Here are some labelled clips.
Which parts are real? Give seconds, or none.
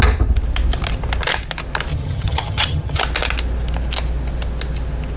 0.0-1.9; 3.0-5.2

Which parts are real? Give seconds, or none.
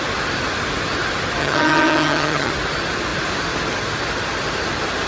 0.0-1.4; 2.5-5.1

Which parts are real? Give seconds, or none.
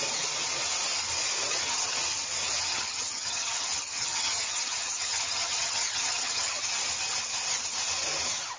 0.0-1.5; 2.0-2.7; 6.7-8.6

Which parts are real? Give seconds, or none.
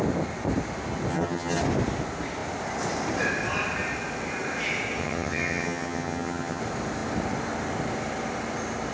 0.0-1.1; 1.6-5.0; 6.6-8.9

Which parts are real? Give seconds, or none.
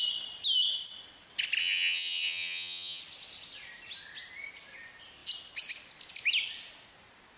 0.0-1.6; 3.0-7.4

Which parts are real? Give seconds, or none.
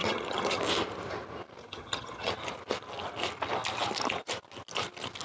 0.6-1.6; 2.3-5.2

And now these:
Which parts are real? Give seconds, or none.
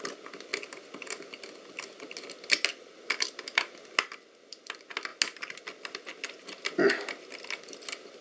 0.0-8.2